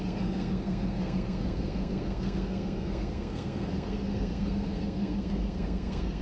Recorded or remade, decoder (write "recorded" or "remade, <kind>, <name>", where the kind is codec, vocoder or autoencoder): remade, codec, SNAC